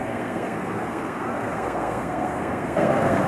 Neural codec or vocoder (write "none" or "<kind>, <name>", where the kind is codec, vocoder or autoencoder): codec, SNAC